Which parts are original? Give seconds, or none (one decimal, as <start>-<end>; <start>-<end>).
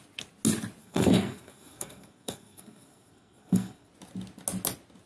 0.0-0.8; 3.9-5.1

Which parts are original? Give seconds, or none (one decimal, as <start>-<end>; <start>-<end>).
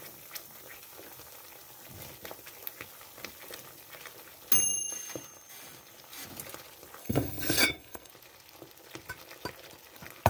0.0-7.0; 8.1-10.3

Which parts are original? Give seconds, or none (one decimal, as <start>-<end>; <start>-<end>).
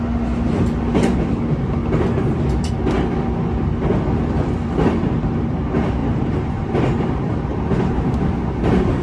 0.0-6.0; 8.2-9.0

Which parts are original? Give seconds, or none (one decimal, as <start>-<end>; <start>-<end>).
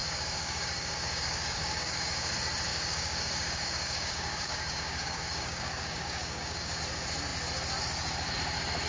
2.3-2.7; 6.8-8.9